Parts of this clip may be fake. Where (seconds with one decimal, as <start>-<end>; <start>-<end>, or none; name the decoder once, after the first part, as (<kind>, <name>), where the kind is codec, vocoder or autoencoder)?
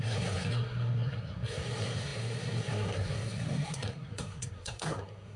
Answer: 0.0-5.4 (codec, SNAC)